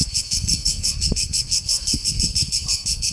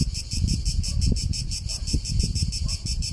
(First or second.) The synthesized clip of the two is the first